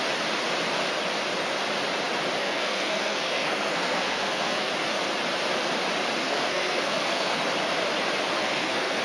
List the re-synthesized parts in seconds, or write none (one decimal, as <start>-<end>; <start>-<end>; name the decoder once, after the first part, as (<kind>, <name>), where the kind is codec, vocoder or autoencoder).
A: 2.4-4.7 (codec, SNAC); 6.2-7.4; 8.4-9.0